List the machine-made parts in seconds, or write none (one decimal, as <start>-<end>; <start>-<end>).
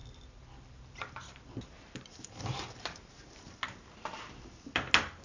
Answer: 0.0-3.1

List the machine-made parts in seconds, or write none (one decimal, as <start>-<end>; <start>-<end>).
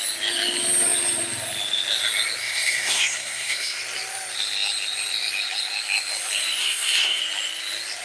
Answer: 2.4-3.8; 6.6-7.2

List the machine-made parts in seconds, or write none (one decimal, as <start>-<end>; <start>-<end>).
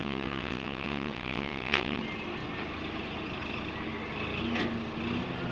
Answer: 0.0-2.0